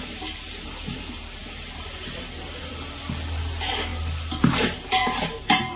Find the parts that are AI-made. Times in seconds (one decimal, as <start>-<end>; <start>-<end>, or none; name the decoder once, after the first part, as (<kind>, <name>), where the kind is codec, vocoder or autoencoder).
5.0-5.8 (vocoder, BigVGAN v2)